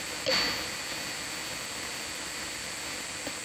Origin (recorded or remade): recorded